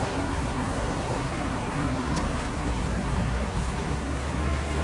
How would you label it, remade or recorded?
remade